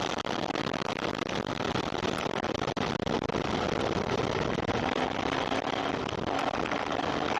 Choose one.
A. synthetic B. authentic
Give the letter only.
B